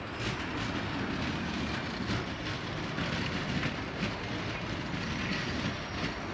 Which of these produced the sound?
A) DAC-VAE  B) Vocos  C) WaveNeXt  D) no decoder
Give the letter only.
D